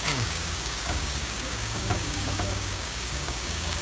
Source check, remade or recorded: remade